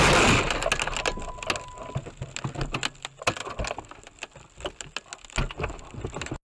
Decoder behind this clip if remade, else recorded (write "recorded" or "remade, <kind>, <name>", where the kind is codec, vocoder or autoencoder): recorded